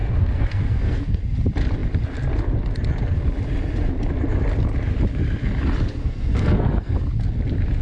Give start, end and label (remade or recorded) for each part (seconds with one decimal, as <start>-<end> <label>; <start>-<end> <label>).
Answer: 0.0-1.2 remade; 1.2-6.0 recorded; 6.0-7.0 remade; 7.0-7.8 recorded